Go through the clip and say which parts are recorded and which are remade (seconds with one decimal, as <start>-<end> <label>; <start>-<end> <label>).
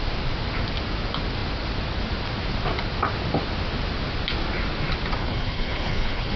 0.0-5.2 recorded; 5.2-6.4 remade